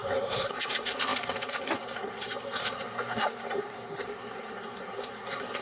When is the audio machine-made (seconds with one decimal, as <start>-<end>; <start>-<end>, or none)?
0.0-5.6